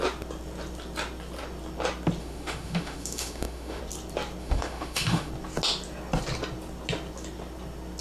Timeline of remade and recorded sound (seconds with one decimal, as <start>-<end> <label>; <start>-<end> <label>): 0.0-2.2 recorded; 2.2-3.8 remade; 3.8-4.4 recorded; 4.4-5.3 remade; 5.3-8.0 recorded